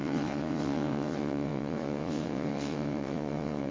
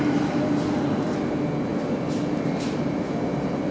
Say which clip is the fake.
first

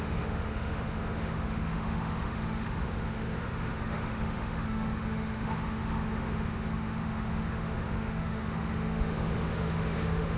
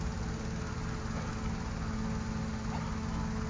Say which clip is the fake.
first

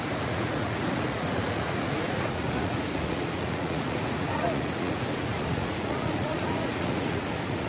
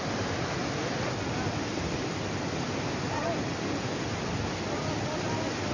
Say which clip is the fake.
first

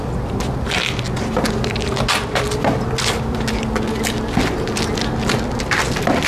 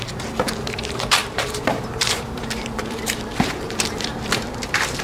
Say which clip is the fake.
second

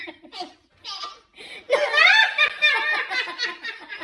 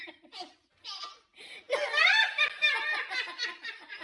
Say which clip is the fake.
second